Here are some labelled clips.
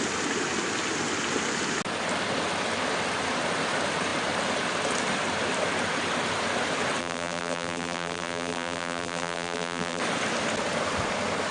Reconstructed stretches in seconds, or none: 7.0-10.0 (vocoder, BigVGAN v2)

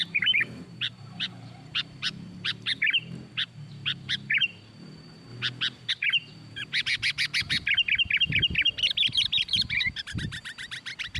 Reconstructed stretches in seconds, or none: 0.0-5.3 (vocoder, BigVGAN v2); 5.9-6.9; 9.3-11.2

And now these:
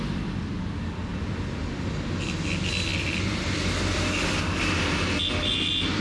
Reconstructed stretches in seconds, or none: 2.9-4.6 (vocoder, BigVGAN v2)

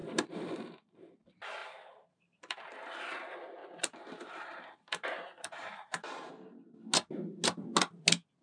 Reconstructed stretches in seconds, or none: 0.0-1.1 (vocoder, BigVGAN v2); 1.6-2.6; 3.6-6.3

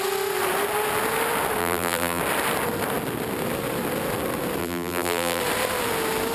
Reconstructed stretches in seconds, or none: 1.6-2.2 (vocoder, BigVGAN v2); 4.6-5.4

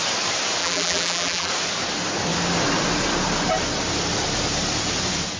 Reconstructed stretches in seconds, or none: 0.6-1.5 (vocoder, BigVGAN v2)

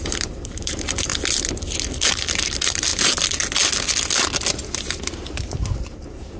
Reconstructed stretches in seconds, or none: 0.0-1.1 (vocoder, BigVGAN v2); 2.1-2.9; 5.7-6.4

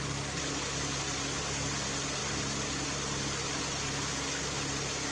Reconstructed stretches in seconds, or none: none